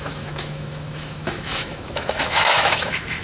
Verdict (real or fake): fake